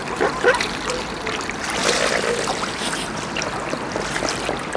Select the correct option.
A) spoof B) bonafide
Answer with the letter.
B